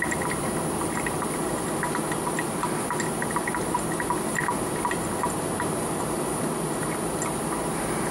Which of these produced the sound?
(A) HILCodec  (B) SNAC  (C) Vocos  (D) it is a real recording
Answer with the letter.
D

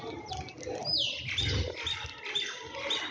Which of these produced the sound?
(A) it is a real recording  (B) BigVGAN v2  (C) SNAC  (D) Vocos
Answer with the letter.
A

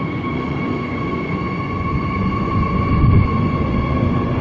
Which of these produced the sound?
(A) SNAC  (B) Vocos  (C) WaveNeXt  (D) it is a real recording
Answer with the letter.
B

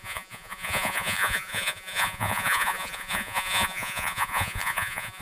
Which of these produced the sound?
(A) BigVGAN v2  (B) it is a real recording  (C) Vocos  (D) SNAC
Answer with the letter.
C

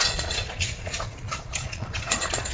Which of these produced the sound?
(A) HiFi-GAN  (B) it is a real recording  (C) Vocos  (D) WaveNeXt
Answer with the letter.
C